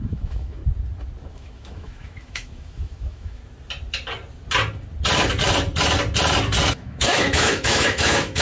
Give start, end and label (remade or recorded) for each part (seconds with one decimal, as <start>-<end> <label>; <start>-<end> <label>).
0.0-0.6 remade; 0.6-1.3 recorded; 1.3-3.4 remade; 3.4-6.7 recorded; 6.7-8.4 remade